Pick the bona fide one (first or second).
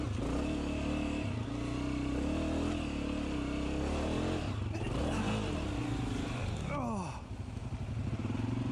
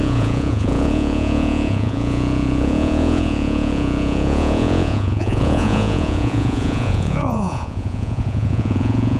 first